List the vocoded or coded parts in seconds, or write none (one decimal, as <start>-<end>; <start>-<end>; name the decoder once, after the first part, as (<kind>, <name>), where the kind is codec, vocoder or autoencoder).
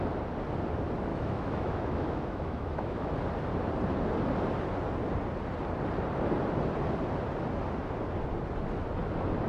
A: 1.1-3.1 (autoencoder, DAC-VAE)